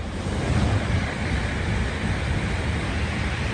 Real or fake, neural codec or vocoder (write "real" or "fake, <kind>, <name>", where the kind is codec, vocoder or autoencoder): real